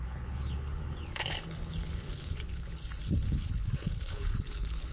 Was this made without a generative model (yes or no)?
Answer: no